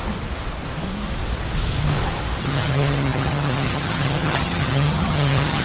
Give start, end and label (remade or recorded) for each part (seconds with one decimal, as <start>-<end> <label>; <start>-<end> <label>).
0.0-2.4 recorded; 2.4-5.6 remade